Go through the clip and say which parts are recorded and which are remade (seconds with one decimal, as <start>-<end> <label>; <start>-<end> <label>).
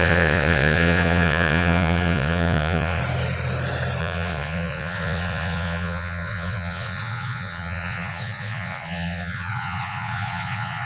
0.0-3.0 remade; 3.0-4.0 recorded; 4.0-10.9 remade